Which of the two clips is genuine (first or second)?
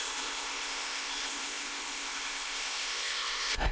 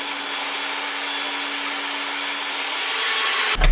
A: second